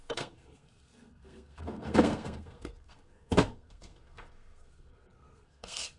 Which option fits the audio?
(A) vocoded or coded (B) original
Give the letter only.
A